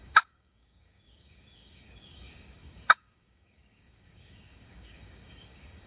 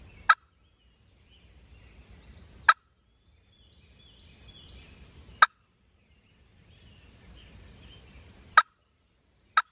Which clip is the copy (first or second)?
first